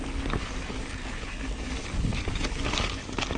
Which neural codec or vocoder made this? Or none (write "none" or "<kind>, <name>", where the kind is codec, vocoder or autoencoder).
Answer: codec, DAC